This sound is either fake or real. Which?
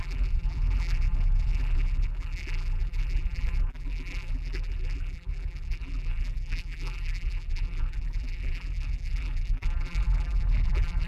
fake